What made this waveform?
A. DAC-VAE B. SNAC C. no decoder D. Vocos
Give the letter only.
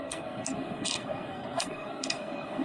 B